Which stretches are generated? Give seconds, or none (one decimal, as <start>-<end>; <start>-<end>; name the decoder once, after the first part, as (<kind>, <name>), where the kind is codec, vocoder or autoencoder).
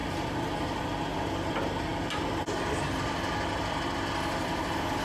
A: none